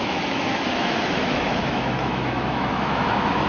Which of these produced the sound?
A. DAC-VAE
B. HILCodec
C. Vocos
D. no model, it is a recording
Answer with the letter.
A